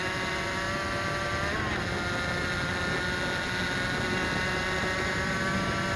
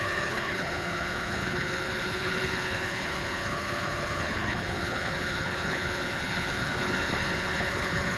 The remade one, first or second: second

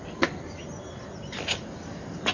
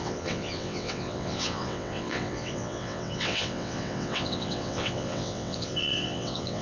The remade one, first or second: second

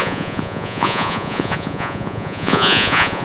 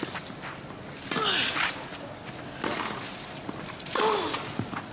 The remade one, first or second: first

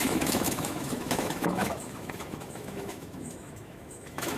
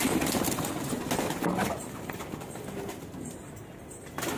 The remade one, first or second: first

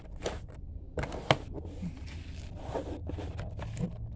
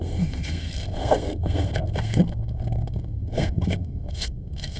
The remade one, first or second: second